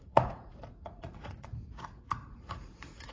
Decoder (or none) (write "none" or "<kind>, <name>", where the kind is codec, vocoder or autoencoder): vocoder, Vocos